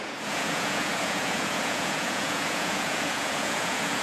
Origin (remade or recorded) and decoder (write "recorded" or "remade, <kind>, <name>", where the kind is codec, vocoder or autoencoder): remade, vocoder, Vocos